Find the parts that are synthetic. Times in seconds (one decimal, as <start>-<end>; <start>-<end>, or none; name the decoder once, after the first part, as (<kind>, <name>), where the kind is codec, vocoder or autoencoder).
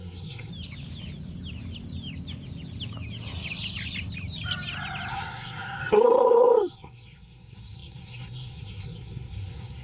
0.0-0.5 (codec, SNAC); 5.1-9.8